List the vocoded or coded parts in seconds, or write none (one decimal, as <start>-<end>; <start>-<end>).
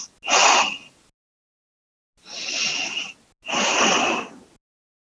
none